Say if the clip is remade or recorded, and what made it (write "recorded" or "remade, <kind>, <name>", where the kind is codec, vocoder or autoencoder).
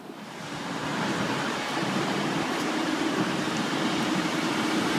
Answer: remade, vocoder, BigVGAN v2